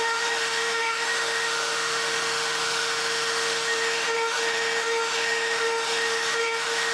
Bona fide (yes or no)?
no